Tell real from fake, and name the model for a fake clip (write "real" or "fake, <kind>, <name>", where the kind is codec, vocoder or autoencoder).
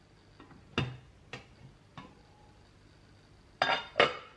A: real